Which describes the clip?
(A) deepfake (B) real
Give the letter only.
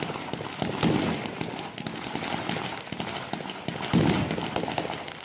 B